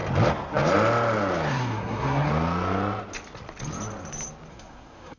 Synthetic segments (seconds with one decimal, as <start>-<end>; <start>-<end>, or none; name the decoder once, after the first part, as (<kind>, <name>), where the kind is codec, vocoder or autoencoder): 1.5-2.3 (codec, SNAC); 4.5-5.2